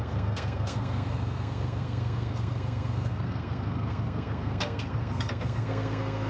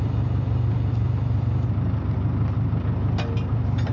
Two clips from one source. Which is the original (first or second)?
second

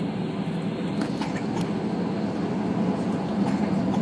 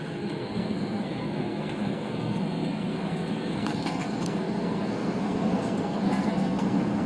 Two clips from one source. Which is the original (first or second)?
first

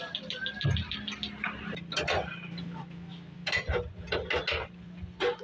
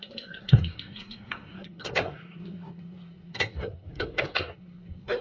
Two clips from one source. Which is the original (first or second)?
first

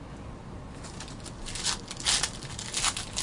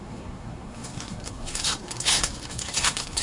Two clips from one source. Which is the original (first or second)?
first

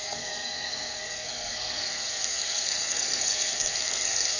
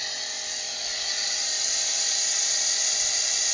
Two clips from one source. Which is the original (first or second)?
second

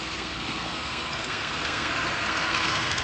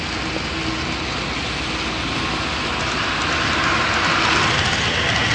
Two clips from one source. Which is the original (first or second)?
second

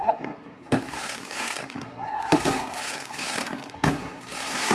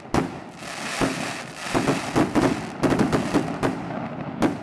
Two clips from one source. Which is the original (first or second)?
second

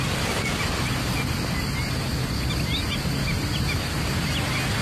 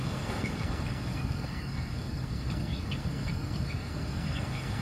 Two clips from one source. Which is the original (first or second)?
first